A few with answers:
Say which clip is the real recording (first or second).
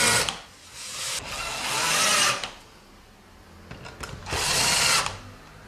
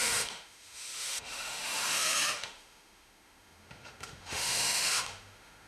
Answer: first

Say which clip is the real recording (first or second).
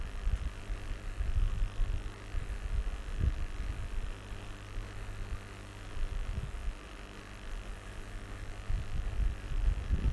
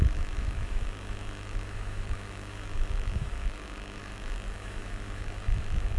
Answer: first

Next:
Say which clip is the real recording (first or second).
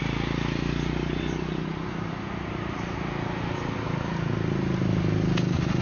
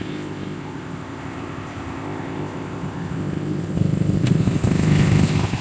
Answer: first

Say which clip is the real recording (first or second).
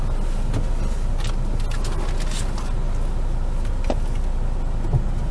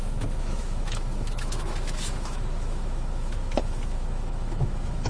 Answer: first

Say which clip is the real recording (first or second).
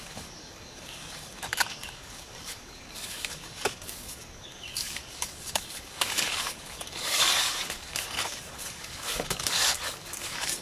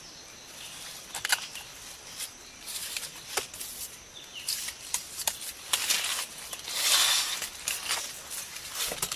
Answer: second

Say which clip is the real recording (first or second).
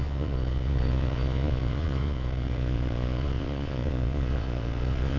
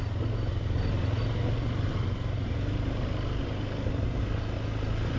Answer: second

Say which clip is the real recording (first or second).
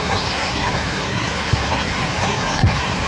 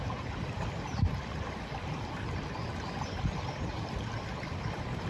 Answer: second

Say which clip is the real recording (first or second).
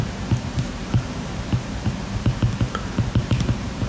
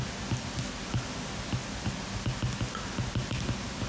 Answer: second